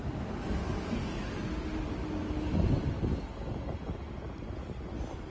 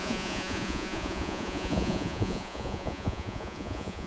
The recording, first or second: first